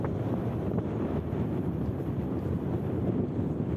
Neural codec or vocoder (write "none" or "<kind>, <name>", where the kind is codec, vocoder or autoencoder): none